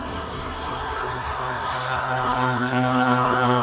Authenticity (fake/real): fake